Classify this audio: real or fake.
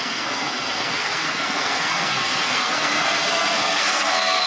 fake